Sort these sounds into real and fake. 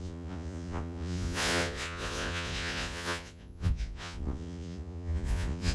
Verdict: fake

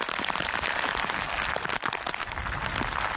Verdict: real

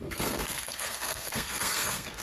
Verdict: fake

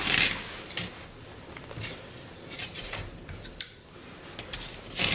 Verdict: real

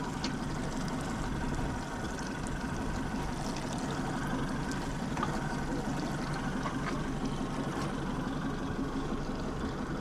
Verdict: real